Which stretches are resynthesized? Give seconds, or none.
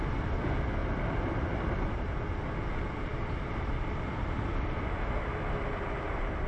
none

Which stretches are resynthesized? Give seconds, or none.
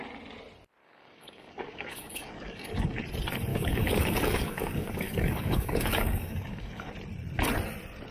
0.8-3.0; 3.5-6.9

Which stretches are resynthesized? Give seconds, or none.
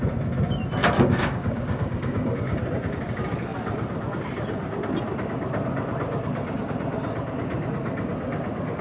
0.8-2.6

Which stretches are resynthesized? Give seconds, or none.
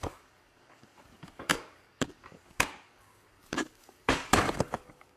0.0-5.2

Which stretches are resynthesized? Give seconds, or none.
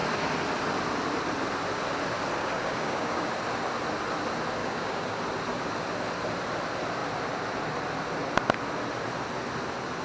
2.4-3.3; 4.6-5.2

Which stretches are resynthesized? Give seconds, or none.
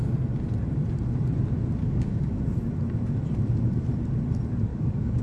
1.8-2.4; 4.7-5.2